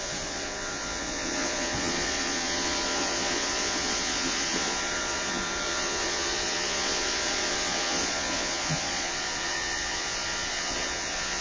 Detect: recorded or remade remade